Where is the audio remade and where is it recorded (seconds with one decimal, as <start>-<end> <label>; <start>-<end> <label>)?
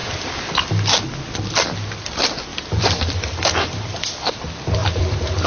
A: 0.0-0.7 remade; 0.7-2.5 recorded; 2.5-4.3 remade; 4.3-4.8 recorded; 4.8-5.5 remade